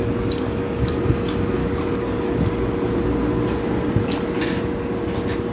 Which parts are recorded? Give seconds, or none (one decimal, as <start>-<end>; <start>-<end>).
1.0-1.6; 2.9-5.5